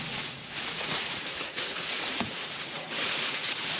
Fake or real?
fake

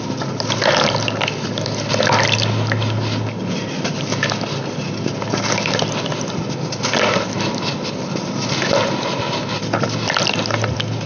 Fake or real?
real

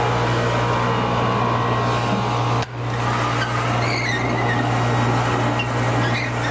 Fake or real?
real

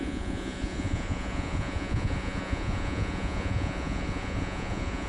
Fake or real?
fake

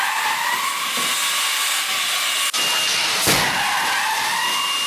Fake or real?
real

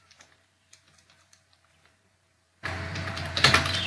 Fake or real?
fake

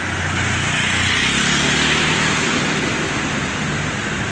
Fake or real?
real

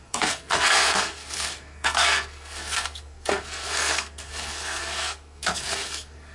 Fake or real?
fake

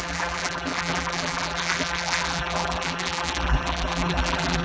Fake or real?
fake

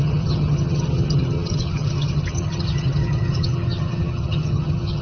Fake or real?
fake